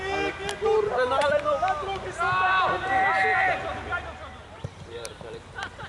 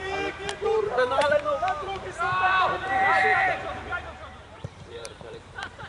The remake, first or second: second